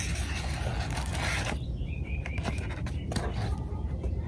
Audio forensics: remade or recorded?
recorded